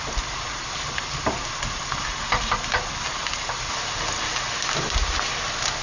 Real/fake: real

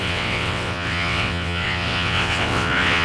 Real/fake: fake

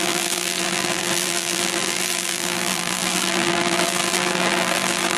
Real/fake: fake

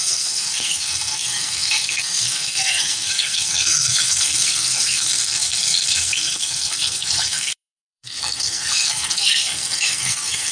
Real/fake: fake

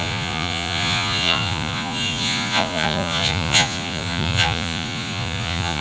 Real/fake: fake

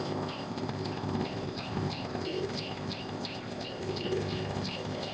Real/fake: fake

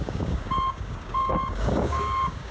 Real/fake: fake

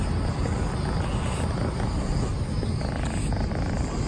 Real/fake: real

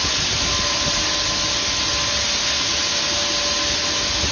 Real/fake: real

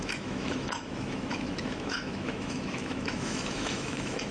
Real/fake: fake